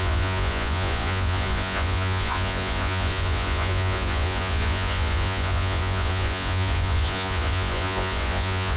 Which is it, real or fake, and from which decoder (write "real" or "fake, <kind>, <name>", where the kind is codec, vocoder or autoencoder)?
fake, vocoder, Vocos